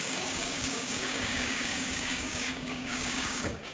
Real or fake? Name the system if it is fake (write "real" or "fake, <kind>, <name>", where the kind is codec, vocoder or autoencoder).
fake, codec, DAC